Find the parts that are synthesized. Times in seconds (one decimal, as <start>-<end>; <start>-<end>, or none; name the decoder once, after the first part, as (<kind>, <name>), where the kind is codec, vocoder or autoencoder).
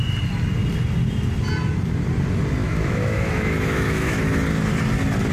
2.6-4.2 (autoencoder, DAC-VAE)